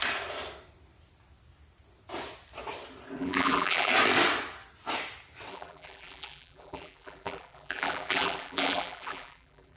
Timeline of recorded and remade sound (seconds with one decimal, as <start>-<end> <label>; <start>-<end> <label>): 0.0-3.2 recorded; 3.2-3.9 remade; 3.9-5.5 recorded; 5.5-9.8 remade